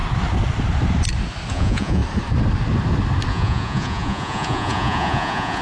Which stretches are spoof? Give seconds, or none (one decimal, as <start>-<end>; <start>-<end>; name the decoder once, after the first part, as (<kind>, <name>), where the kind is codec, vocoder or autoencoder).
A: 1.5-2.0 (vocoder, Vocos); 3.3-5.6